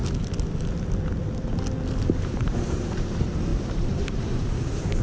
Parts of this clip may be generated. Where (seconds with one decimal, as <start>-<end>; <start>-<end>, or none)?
2.0-5.0